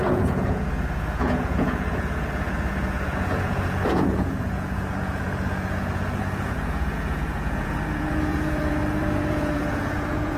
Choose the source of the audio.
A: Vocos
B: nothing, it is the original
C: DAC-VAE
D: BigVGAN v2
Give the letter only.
A